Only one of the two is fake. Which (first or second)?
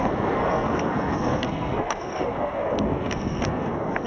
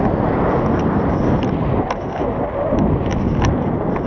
first